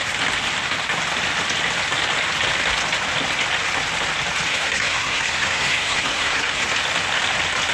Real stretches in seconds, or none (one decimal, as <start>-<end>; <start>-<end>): 0.0-4.5; 6.6-7.7